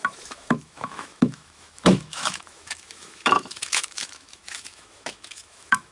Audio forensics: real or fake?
fake